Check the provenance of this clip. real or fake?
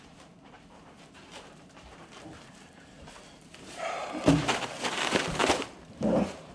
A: fake